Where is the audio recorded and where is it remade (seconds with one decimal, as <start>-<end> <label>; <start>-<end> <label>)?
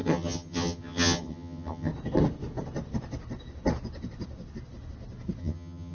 0.0-1.9 remade; 1.9-5.4 recorded; 5.4-5.9 remade